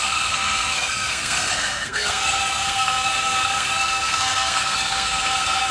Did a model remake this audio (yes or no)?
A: yes